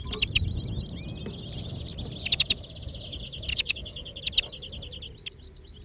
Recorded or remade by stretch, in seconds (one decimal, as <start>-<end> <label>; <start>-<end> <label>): 0.0-3.5 recorded; 3.5-4.2 remade; 4.2-5.8 recorded